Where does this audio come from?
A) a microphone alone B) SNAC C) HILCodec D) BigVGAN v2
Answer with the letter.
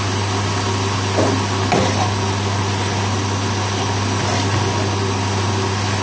A